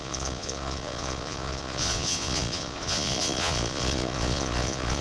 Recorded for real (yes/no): no